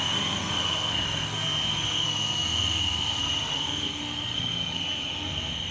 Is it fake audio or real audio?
fake